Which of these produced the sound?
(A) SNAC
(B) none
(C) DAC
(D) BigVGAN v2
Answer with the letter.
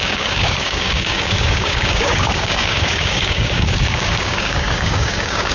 C